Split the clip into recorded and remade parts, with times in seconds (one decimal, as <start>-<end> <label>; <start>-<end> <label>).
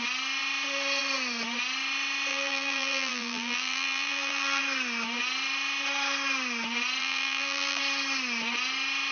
0.0-2.3 recorded; 2.3-4.6 remade; 4.6-7.0 recorded; 7.0-7.8 remade; 7.8-9.1 recorded